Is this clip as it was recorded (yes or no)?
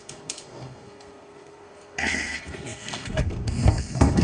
no